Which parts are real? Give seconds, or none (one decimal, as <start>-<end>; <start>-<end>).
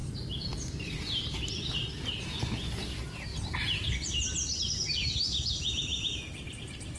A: 0.6-7.0